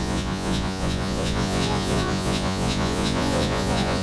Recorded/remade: remade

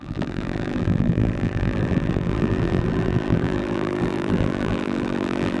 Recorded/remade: remade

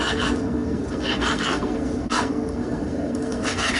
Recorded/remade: remade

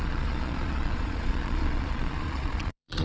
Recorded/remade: remade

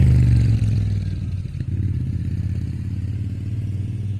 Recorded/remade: remade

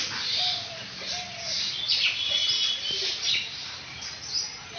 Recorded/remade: recorded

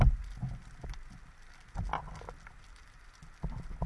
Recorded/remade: recorded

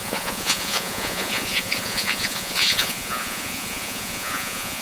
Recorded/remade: remade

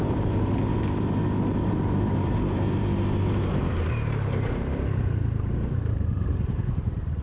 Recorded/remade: remade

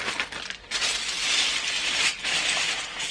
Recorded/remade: recorded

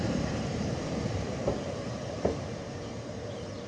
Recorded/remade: remade